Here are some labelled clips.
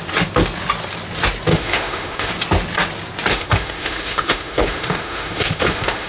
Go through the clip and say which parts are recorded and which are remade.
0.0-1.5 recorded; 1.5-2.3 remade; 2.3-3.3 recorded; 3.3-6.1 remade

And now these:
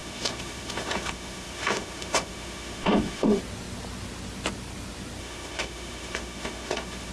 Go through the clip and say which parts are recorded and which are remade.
0.0-3.4 remade; 3.4-5.2 recorded; 5.2-7.1 remade

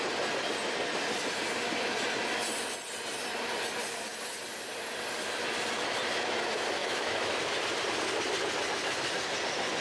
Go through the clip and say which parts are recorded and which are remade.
0.0-6.8 recorded; 6.8-7.3 remade; 7.3-9.8 recorded

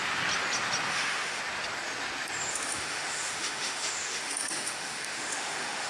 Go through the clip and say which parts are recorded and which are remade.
0.0-0.9 recorded; 0.9-1.4 remade; 1.4-2.5 recorded; 2.5-5.9 remade

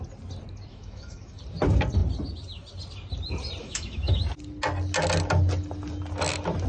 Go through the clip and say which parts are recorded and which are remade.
0.0-0.7 recorded; 0.7-1.4 remade; 1.4-3.6 recorded; 3.6-4.2 remade; 4.2-6.7 recorded

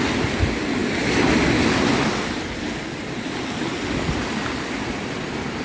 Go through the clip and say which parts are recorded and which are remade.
0.0-5.6 recorded